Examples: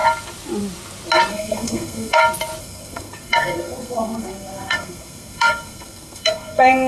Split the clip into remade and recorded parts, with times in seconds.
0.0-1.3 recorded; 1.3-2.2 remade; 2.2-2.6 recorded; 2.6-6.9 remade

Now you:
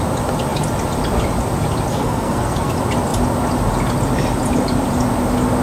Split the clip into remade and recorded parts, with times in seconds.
0.0-1.9 recorded; 1.9-2.7 remade; 2.7-5.6 recorded

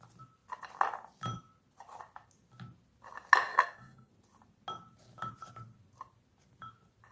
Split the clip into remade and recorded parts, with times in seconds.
0.0-3.5 recorded; 3.5-4.1 remade; 4.1-7.1 recorded

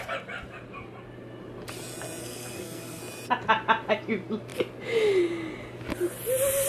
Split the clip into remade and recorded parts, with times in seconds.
0.0-2.2 recorded; 2.2-3.0 remade; 3.0-6.7 recorded

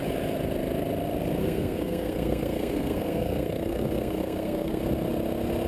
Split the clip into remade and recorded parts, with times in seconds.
0.0-1.4 recorded; 1.4-4.8 remade; 4.8-5.7 recorded

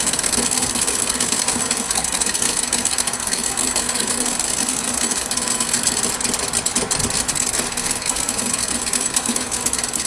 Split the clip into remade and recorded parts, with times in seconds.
0.0-6.0 remade; 6.0-7.3 recorded; 7.3-10.1 remade

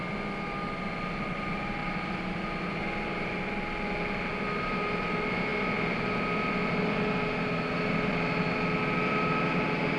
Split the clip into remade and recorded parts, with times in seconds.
0.0-10.0 recorded

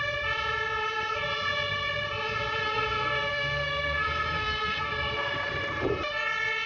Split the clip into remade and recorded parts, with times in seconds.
0.0-2.6 recorded; 2.6-4.8 remade; 4.8-6.7 recorded